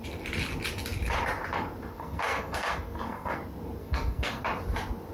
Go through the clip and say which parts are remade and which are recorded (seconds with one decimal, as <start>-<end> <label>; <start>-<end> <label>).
0.0-1.9 recorded; 1.9-3.4 remade; 3.4-3.8 recorded; 3.8-4.4 remade; 4.4-5.1 recorded